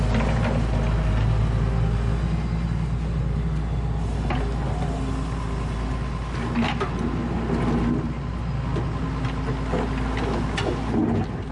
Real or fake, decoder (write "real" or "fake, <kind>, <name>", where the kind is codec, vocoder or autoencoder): real